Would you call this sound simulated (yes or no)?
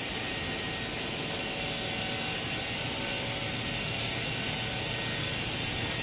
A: no